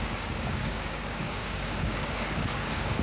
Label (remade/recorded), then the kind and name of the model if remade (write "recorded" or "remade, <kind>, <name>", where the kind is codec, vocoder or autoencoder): remade, codec, DAC